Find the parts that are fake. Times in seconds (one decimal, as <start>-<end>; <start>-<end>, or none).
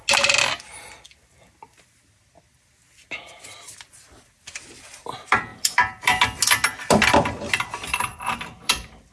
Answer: 5.5-6.2; 8.1-8.7